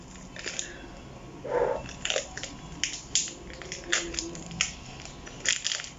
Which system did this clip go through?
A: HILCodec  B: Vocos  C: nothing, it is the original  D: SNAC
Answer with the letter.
C